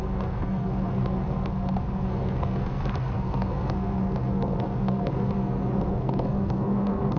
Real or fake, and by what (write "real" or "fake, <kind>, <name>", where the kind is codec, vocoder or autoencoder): fake, codec, SNAC